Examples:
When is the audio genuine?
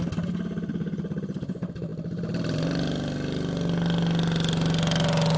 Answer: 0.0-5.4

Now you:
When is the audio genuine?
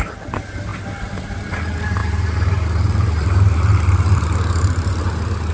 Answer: 0.0-2.0; 4.9-5.5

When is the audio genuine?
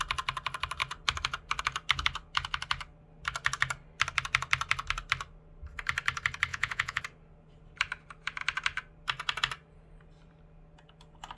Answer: 0.0-6.5; 7.0-11.4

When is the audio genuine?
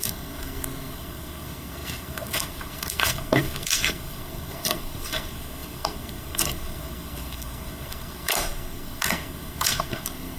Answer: none